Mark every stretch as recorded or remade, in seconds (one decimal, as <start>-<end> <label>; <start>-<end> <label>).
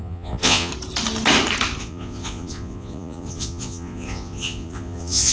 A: 0.0-0.7 remade; 0.7-1.8 recorded; 1.8-5.3 remade